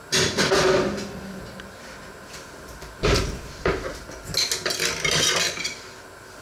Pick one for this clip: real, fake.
real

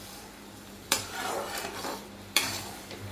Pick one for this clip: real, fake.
fake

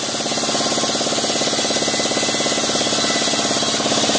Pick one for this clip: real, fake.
real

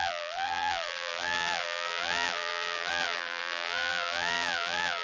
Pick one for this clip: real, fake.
fake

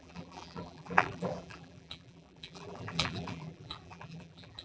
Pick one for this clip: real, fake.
fake